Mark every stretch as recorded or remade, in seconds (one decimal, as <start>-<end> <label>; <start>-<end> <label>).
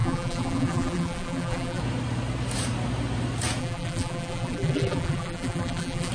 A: 0.0-1.8 remade; 1.8-3.6 recorded; 3.6-6.1 remade